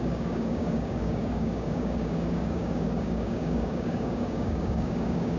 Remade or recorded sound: remade